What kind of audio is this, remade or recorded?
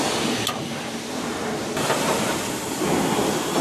recorded